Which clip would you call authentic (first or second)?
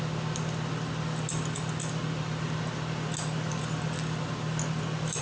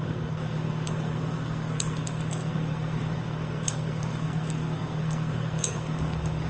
first